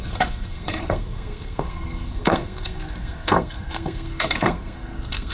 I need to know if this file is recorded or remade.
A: remade